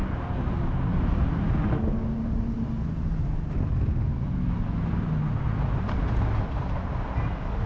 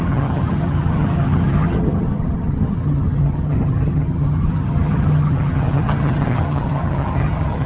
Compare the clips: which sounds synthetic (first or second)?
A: second